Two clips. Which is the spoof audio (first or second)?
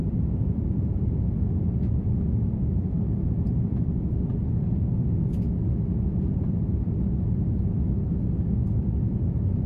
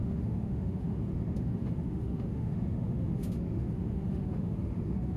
second